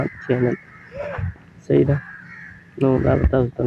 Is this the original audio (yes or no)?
yes